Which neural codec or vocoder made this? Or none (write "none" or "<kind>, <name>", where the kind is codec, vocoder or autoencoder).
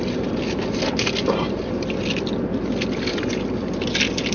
none